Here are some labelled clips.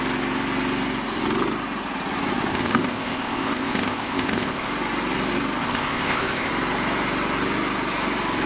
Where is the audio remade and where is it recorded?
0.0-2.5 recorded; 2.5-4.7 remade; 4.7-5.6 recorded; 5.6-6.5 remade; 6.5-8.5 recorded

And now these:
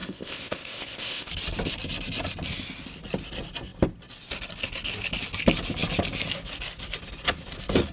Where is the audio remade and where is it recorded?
0.0-1.3 remade; 1.3-7.9 recorded

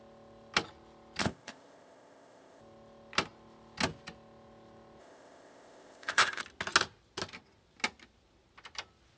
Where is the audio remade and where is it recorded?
0.0-1.2 recorded; 1.2-2.6 remade; 2.6-5.0 recorded; 5.0-6.4 remade; 6.4-9.2 recorded

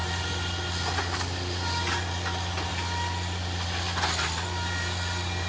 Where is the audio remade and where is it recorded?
0.0-5.5 recorded